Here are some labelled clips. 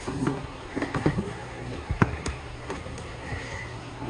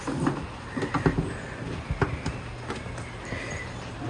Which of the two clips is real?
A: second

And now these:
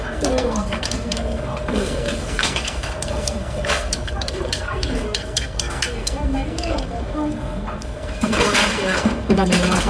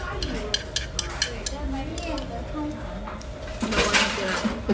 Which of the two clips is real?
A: second